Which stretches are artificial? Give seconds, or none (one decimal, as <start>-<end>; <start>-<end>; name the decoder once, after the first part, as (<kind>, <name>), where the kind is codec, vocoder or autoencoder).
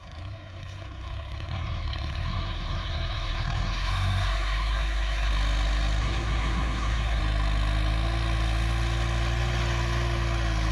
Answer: 0.0-5.3 (codec, SNAC); 6.0-7.2